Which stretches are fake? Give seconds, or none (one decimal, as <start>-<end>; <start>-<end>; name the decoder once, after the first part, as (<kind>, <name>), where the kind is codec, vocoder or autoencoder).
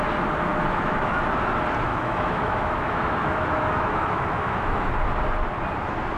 0.5-1.3 (autoencoder, DAC-VAE); 1.9-4.9